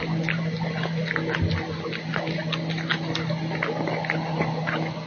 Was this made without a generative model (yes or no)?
yes